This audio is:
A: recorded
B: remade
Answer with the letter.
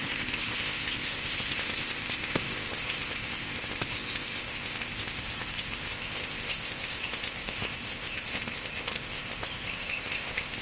B